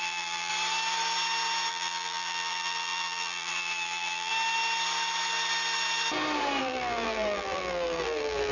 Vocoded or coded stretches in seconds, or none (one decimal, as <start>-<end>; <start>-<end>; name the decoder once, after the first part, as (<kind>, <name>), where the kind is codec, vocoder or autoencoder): 0.0-0.5 (vocoder, BigVGAN v2); 1.7-4.3; 6.6-8.5